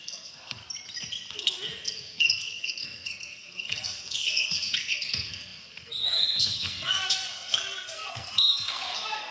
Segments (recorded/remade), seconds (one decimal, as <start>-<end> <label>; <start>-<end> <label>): 0.0-0.6 remade; 0.6-1.3 recorded; 1.3-9.3 remade